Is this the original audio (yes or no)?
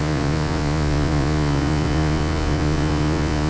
no